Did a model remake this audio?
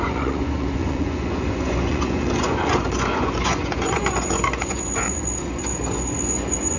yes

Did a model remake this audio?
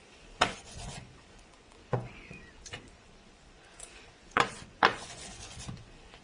yes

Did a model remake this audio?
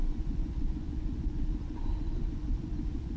yes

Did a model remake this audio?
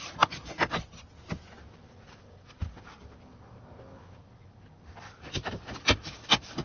no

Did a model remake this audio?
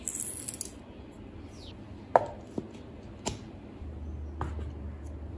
no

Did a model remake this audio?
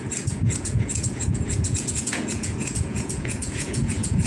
yes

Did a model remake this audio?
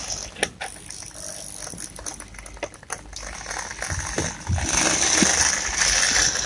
no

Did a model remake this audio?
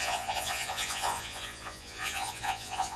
yes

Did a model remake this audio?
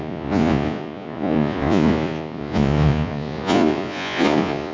yes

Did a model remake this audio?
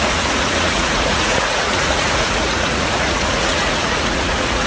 yes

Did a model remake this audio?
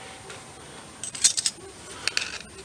no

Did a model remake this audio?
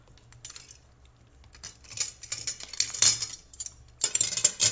no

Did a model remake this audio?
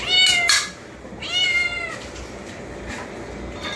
no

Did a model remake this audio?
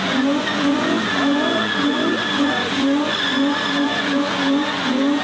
yes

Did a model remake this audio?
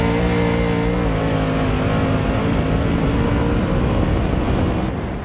no